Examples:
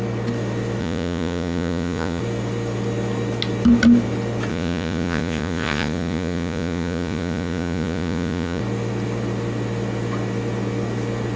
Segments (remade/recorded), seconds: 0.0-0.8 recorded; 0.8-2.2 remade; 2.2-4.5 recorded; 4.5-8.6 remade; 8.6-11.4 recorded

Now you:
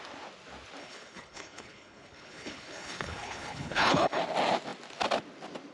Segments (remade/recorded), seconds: 0.0-0.8 recorded; 0.8-4.2 remade; 4.2-5.7 recorded

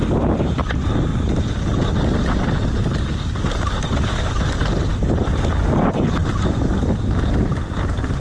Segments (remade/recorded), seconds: 0.0-0.5 recorded; 0.5-1.1 remade; 1.1-3.8 recorded; 3.8-6.2 remade; 6.2-7.5 recorded; 7.5-8.2 remade

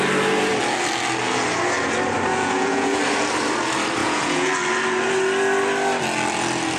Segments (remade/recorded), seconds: 0.0-2.3 recorded; 2.3-3.0 remade; 3.0-4.0 recorded; 4.0-4.5 remade; 4.5-6.8 recorded

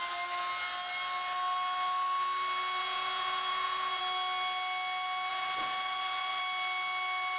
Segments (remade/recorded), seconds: 0.0-2.8 recorded; 2.8-4.0 remade; 4.0-5.3 recorded; 5.3-6.4 remade; 6.4-7.4 recorded